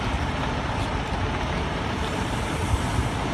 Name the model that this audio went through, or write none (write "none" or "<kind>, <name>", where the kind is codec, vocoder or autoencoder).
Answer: none